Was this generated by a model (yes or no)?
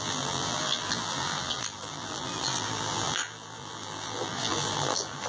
yes